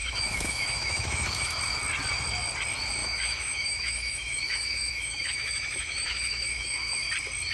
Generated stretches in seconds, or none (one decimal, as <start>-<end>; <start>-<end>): 0.0-1.6; 3.0-7.1